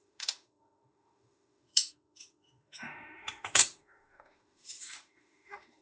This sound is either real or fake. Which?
fake